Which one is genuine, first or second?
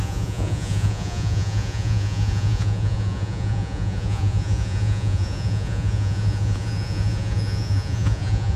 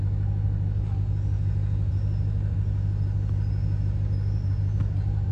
second